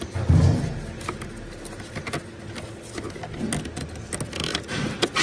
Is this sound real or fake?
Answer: real